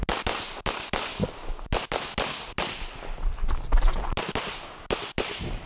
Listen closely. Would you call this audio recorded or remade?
recorded